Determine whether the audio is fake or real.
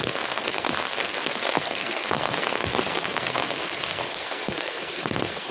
fake